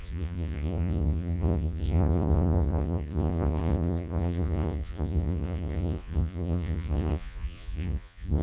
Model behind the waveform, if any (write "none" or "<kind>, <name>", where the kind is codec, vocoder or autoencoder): vocoder, Vocos